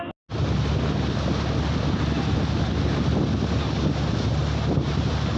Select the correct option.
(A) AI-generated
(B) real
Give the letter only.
B